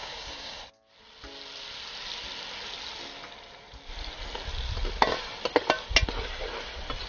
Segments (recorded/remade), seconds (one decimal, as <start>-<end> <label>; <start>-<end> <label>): 0.0-0.6 remade; 0.6-7.1 recorded